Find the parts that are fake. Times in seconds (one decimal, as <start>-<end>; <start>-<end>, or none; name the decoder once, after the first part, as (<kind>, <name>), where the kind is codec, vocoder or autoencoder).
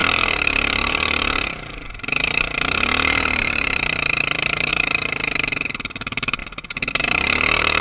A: 0.0-6.4 (vocoder, BigVGAN v2); 6.9-7.8